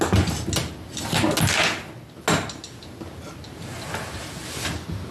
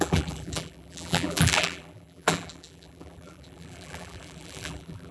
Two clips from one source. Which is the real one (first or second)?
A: first